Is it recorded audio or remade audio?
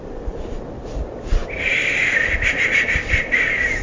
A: remade